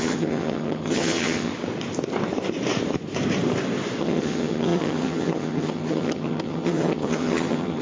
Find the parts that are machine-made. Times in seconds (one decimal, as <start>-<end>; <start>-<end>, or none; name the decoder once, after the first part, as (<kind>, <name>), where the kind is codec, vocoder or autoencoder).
0.0-1.5 (vocoder, HiFi-GAN); 4.0-7.8